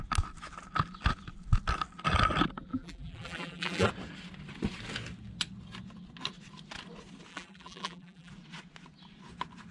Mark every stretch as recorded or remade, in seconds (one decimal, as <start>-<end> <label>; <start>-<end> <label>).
0.0-2.7 recorded; 2.7-3.9 remade; 3.9-7.3 recorded; 7.3-8.3 remade; 8.3-9.7 recorded